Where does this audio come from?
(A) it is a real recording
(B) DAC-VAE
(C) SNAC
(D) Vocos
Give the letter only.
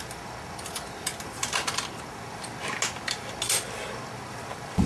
A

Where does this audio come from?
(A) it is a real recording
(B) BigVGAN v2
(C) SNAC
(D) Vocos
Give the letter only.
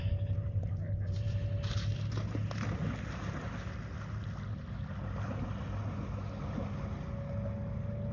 A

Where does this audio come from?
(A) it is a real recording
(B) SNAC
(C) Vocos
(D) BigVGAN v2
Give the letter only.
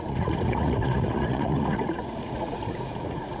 C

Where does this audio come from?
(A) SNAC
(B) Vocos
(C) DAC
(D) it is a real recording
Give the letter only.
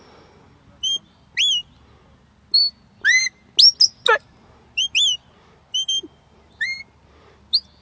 D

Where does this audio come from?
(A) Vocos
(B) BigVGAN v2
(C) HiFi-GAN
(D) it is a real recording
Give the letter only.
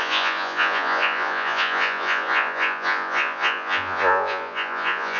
A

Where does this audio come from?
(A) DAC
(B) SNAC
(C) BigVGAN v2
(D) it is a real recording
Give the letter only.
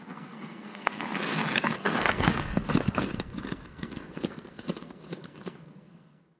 B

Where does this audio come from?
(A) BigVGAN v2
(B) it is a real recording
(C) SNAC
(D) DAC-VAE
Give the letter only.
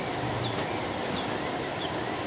B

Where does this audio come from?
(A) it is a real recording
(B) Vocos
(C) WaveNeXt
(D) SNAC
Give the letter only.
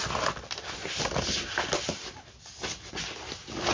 A